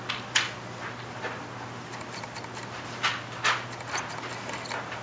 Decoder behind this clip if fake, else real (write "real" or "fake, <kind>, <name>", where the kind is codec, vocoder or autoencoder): real